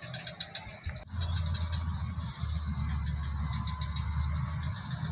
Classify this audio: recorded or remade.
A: recorded